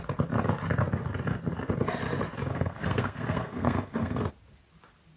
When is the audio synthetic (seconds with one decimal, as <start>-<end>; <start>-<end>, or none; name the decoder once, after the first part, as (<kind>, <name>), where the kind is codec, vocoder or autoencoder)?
2.5-4.3 (codec, SNAC)